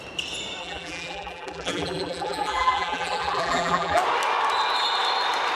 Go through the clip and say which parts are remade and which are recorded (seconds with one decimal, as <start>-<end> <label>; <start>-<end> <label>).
0.0-0.6 recorded; 0.6-4.0 remade; 4.0-5.6 recorded